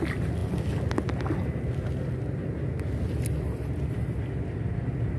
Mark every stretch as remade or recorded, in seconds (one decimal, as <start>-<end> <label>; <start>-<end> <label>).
0.0-5.2 recorded

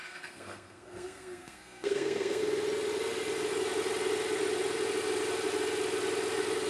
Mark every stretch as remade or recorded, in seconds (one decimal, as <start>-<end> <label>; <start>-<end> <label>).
0.0-2.4 remade; 2.4-6.7 recorded